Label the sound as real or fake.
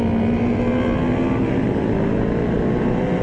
real